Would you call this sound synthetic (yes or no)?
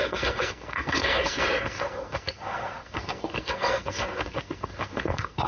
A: yes